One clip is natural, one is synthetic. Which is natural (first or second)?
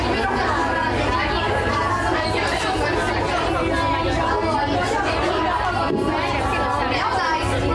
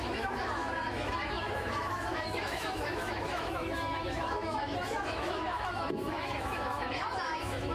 first